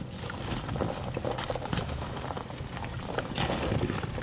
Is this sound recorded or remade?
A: remade